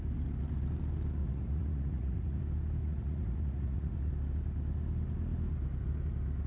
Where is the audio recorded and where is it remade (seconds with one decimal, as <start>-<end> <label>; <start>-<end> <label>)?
0.0-1.2 recorded; 1.2-2.4 remade; 2.4-2.8 recorded; 2.8-4.1 remade; 4.1-6.5 recorded